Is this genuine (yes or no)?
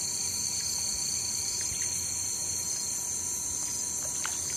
yes